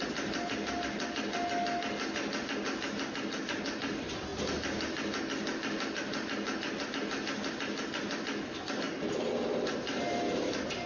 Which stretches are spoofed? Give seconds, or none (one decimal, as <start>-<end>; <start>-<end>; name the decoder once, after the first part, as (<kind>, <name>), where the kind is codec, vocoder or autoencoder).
none